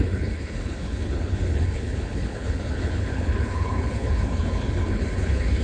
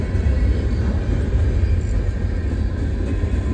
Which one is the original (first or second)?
second